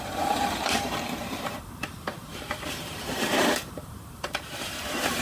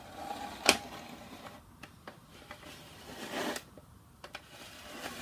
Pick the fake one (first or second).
first